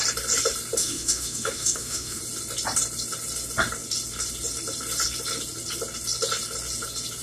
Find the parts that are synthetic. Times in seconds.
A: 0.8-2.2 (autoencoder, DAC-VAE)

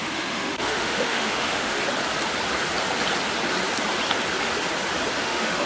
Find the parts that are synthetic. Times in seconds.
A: 0.0-1.8 (autoencoder, DAC-VAE); 5.2-5.7

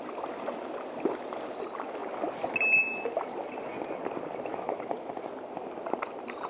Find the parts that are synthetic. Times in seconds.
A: 4.5-5.1 (autoencoder, DAC-VAE)